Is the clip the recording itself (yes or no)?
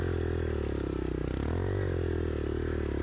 yes